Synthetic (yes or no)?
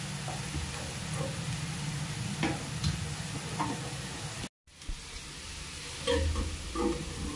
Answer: no